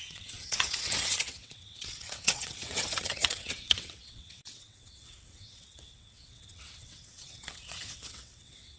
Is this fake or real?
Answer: fake